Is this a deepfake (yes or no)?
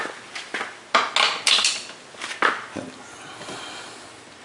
no